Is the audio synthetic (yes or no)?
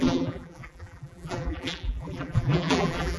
yes